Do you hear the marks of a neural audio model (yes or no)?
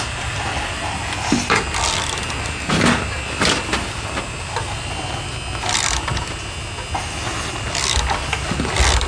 no